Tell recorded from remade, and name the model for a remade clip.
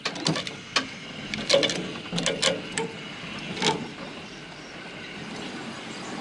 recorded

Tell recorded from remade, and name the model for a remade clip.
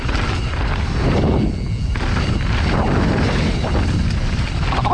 recorded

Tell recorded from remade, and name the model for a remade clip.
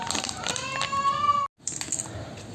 recorded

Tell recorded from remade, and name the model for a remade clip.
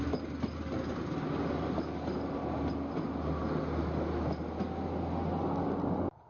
recorded